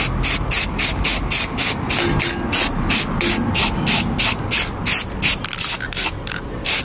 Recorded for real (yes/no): yes